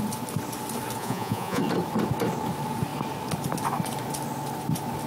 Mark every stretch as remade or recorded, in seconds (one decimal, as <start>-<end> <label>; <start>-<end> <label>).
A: 0.0-1.0 recorded; 1.0-1.6 remade; 1.6-5.1 recorded